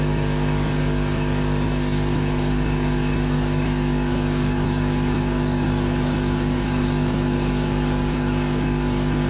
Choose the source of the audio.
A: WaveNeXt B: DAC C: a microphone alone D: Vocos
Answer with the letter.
B